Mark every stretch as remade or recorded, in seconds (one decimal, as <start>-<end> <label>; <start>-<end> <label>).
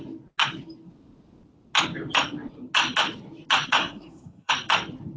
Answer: 0.0-3.8 recorded; 3.8-4.5 remade; 4.5-5.2 recorded